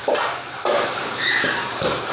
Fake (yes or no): no